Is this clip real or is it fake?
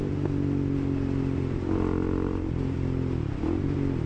real